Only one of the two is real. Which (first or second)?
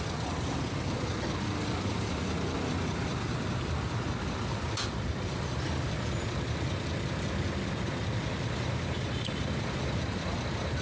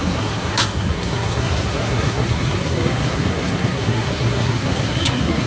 first